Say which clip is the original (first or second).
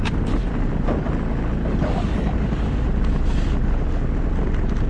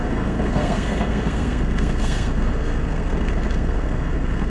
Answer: first